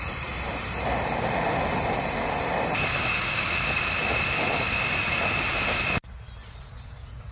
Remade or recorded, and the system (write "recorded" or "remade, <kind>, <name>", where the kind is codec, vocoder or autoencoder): recorded